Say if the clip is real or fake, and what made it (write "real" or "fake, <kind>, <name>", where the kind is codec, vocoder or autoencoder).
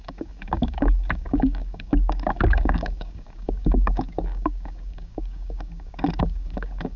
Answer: fake, codec, DAC